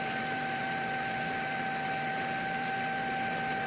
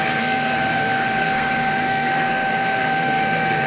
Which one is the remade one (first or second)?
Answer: second